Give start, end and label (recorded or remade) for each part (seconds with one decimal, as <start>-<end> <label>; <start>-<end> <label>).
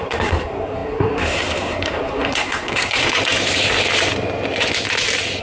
0.0-3.0 remade; 3.0-5.4 recorded